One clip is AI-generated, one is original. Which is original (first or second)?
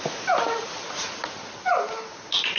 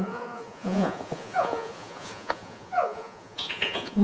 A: first